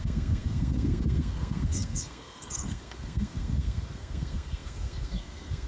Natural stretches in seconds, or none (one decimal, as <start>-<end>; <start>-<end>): none